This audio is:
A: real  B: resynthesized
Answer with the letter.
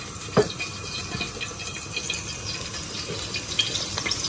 A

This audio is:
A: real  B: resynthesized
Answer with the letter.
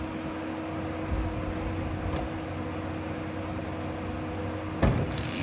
A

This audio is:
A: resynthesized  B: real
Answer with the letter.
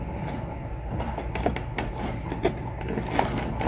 B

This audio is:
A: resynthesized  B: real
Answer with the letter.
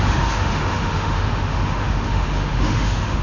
A